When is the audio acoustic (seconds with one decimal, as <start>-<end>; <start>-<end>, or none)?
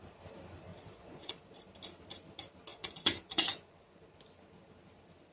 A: 0.0-0.7; 1.4-2.7; 4.0-5.3